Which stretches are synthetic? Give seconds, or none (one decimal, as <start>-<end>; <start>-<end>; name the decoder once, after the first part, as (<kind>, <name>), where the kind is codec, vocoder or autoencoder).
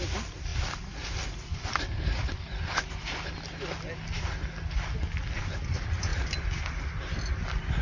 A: none